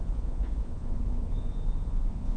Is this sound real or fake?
fake